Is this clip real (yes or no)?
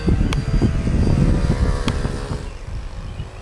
yes